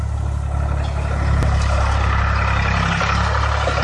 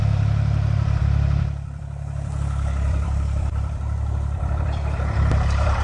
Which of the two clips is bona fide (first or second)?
first